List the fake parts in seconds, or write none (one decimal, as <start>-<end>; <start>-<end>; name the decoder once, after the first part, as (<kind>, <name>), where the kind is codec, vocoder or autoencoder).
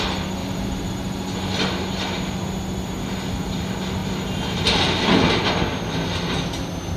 0.4-0.9 (vocoder, BigVGAN v2)